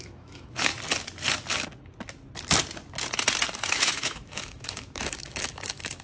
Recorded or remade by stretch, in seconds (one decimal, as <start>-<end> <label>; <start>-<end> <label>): 0.0-0.7 remade; 0.7-3.6 recorded; 3.6-6.0 remade